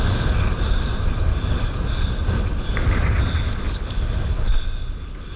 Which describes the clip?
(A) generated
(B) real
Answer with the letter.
B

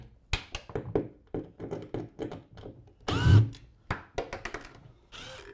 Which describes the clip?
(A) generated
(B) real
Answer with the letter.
B